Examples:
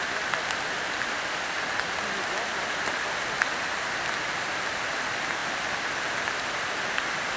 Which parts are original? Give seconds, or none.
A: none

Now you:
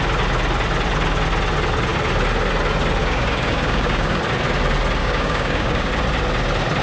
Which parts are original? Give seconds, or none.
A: 0.0-3.0; 4.2-5.0; 5.9-6.8

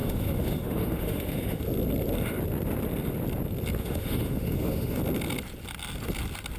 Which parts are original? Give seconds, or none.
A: 1.6-3.8; 5.0-6.6

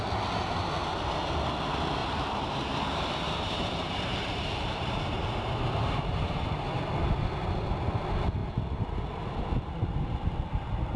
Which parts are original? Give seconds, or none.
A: 0.0-2.0; 6.8-11.0

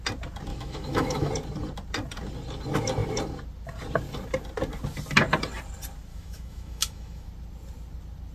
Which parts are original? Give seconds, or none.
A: 0.0-0.5; 1.3-6.1; 7.3-8.3

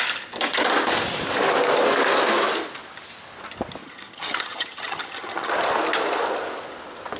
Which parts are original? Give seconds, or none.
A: 0.0-3.8; 5.5-7.2

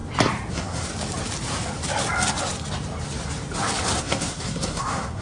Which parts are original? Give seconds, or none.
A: 0.0-0.5; 0.9-4.0

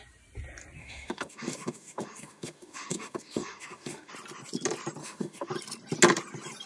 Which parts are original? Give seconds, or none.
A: 0.0-0.8; 4.1-5.0; 5.5-6.7